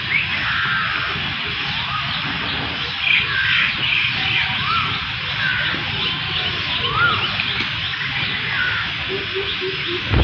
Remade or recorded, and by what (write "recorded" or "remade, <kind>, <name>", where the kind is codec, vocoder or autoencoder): recorded